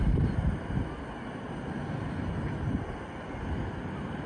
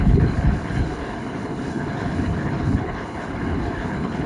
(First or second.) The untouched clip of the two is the first